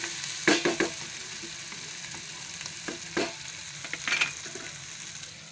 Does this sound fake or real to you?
real